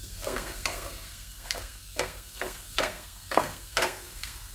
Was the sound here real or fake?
fake